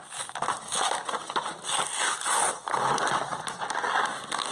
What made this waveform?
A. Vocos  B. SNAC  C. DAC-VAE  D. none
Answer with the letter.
D